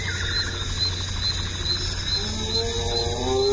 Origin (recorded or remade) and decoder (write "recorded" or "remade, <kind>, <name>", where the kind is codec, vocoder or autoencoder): recorded